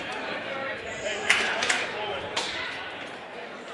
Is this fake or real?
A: fake